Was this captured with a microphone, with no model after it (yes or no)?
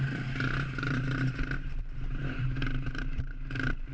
no